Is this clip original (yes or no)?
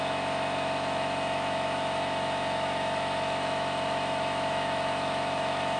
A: no